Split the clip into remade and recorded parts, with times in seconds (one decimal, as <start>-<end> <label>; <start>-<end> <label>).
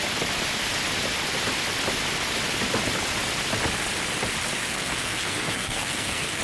0.0-4.6 recorded; 4.6-6.4 remade